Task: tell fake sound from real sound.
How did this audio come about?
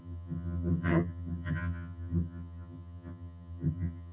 fake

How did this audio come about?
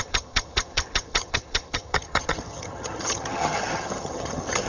fake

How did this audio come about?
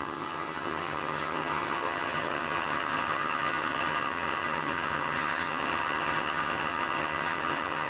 fake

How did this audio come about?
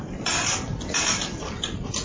real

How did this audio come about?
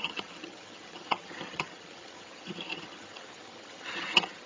fake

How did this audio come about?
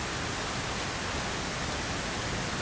real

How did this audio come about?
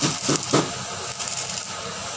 real